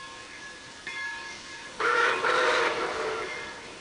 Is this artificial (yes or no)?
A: yes